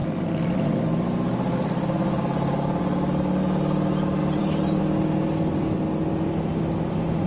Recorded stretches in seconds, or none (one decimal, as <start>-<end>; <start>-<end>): 0.0-4.2; 4.8-7.3

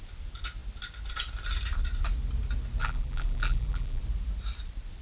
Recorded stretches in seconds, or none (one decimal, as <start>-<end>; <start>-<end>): 0.0-2.8; 4.0-5.0

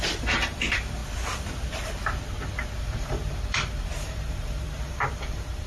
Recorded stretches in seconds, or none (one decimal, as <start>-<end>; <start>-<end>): 1.0-2.8

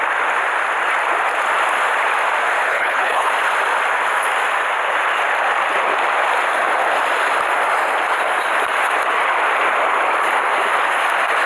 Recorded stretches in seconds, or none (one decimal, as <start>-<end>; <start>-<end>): 0.0-2.7; 3.3-11.5

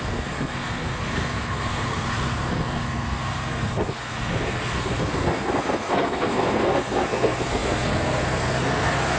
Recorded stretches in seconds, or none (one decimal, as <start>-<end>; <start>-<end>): none